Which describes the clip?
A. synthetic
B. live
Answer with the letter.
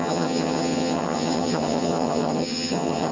A